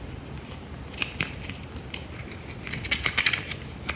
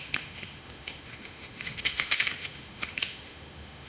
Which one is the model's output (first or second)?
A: second